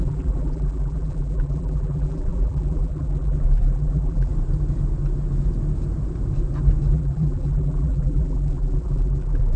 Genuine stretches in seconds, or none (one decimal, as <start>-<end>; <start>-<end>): 4.3-6.9